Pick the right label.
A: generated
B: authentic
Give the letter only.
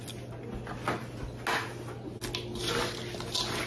B